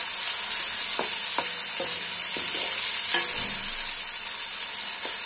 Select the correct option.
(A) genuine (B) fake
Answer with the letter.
A